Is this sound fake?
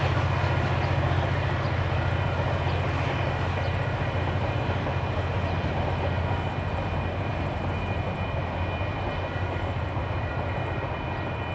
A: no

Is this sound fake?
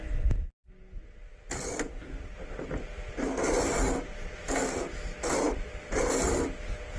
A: no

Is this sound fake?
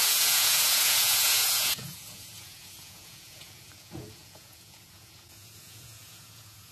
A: yes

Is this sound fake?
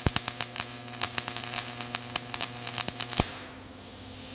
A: no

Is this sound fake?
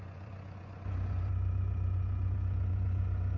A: yes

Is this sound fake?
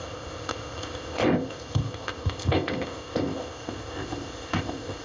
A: yes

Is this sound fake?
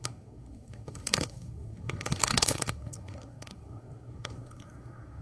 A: yes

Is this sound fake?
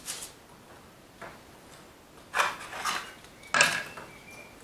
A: no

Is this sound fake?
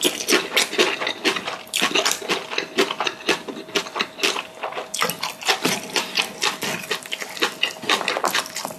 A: no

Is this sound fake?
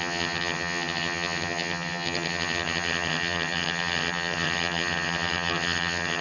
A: yes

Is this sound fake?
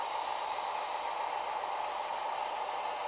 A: no